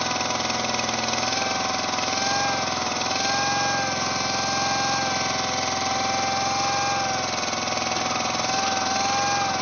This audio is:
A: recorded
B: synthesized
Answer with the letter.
A